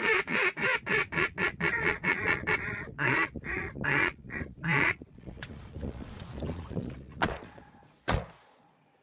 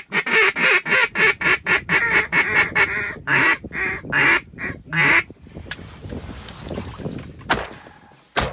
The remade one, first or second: first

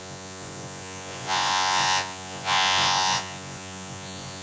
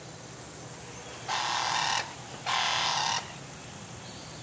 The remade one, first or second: first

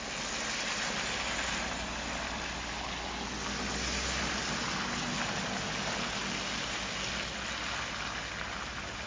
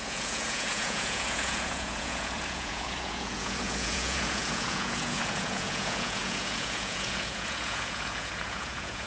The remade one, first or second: second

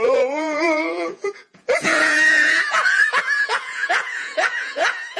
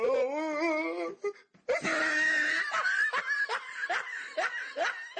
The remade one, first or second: first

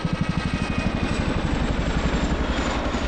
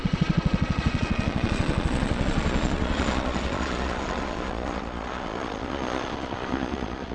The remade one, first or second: second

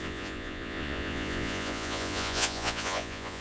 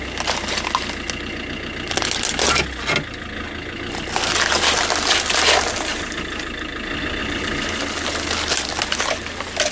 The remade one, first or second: first